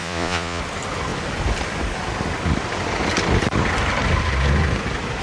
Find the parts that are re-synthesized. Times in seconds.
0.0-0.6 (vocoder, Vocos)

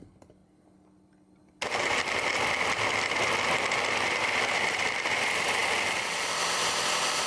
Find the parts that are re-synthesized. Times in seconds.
0.0-0.4 (vocoder, BigVGAN v2); 4.7-7.3

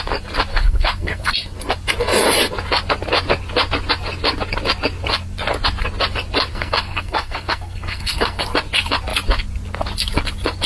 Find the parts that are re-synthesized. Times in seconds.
0.5-1.3 (codec, SNAC); 6.5-8.4

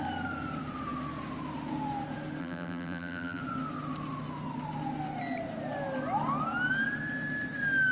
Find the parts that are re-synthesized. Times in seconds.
2.4-3.4 (vocoder, BigVGAN v2)

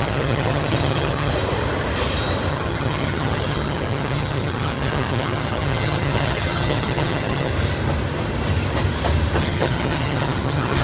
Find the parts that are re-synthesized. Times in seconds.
0.0-1.3 (vocoder, HiFi-GAN); 2.5-7.5; 9.4-10.8

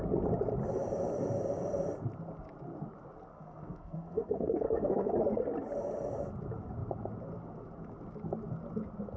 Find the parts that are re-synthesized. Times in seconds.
3.3-5.1 (codec, SNAC)

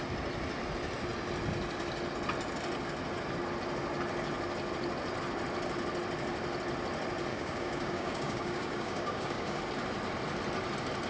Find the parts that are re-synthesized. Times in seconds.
7.3-9.6 (codec, DAC)

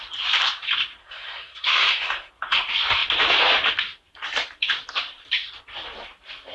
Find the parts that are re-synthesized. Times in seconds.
1.0-2.3 (codec, SNAC)